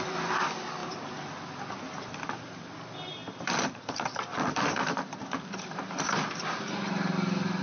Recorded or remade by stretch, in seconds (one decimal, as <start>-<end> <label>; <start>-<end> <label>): 0.0-3.2 recorded; 3.2-7.6 remade